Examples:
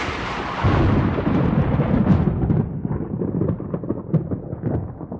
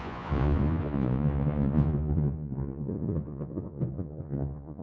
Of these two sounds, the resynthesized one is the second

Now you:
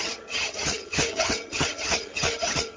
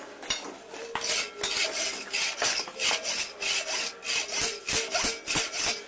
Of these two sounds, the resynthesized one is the first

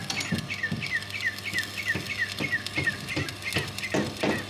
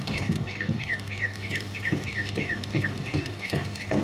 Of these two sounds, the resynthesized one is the second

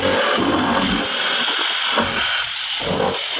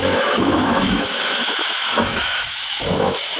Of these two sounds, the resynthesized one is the second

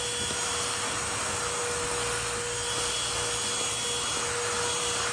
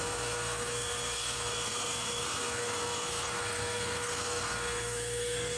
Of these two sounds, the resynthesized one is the second